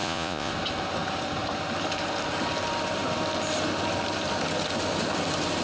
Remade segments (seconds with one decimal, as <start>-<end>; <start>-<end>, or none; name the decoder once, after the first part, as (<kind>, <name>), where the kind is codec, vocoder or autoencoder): 0.0-0.5 (vocoder, Vocos)